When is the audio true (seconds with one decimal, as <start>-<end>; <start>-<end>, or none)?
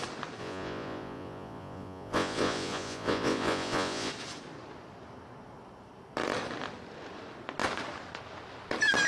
0.0-0.4; 4.1-9.1